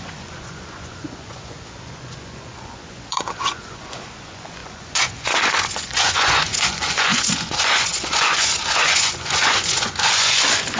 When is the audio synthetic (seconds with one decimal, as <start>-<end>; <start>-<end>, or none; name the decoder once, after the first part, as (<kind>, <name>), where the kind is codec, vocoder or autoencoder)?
0.0-10.8 (vocoder, Vocos)